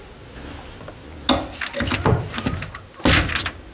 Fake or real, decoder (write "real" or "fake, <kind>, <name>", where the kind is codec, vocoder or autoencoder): real